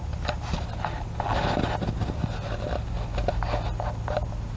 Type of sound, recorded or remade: recorded